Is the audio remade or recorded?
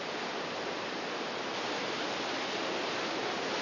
recorded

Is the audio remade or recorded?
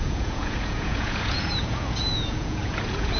remade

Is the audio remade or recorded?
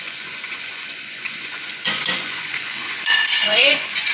remade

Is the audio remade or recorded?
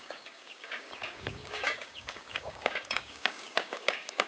remade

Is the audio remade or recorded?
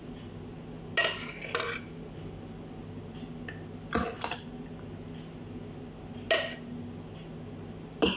recorded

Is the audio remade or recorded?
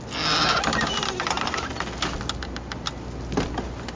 recorded